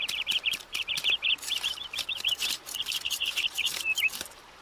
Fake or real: fake